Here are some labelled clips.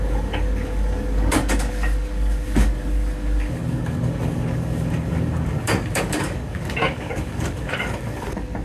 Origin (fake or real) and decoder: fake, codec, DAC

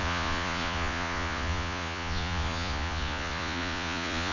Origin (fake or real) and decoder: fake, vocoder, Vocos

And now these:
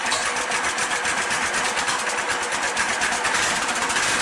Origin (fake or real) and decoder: real